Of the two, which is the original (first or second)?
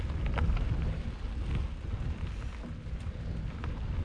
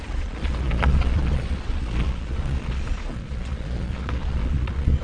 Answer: first